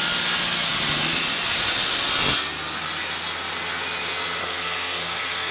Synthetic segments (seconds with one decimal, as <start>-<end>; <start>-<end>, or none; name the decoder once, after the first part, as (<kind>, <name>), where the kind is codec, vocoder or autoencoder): 4.4-5.5 (codec, SNAC)